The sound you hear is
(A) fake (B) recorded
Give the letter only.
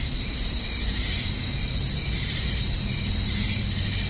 A